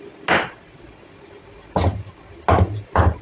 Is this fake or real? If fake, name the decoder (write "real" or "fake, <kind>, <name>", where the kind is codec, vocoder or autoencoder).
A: real